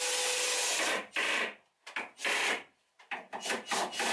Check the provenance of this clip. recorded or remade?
recorded